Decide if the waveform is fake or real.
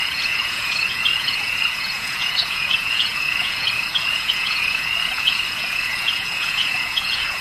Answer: fake